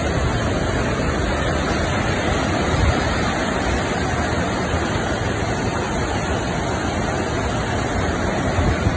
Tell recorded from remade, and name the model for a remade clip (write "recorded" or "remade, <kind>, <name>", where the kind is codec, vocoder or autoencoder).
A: recorded